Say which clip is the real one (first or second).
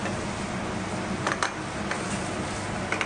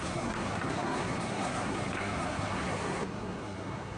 first